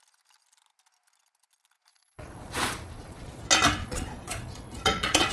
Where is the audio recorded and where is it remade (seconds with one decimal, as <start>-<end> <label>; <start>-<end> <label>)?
0.0-1.9 recorded; 1.9-3.4 remade; 3.4-3.8 recorded; 3.8-5.3 remade